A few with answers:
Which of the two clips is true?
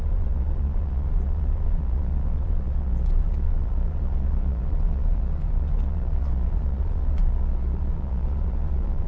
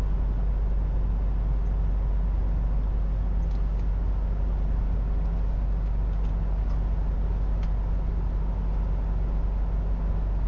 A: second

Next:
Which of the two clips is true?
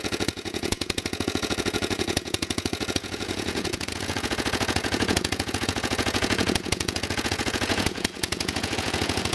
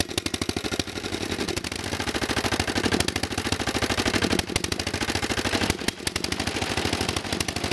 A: second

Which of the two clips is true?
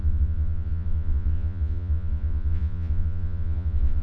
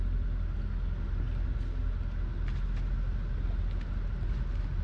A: second